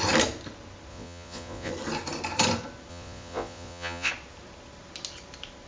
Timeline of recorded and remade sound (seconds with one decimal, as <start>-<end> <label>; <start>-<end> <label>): 0.0-0.9 recorded; 0.9-1.7 remade; 1.7-2.9 recorded; 2.9-4.1 remade; 4.1-5.7 recorded